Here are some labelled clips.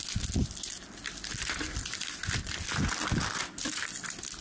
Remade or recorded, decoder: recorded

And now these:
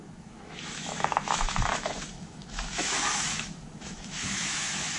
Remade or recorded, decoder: remade, autoencoder, DAC-VAE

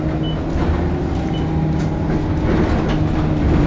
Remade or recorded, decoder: recorded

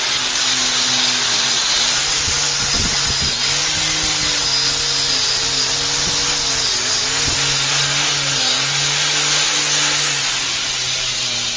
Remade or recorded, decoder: recorded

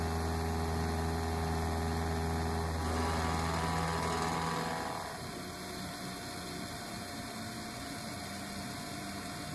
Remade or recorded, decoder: recorded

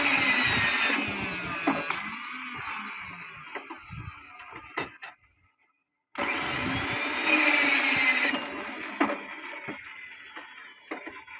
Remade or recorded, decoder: recorded